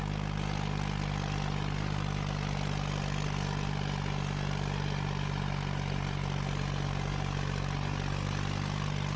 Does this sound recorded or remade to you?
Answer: recorded